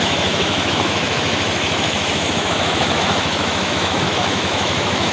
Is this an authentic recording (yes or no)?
no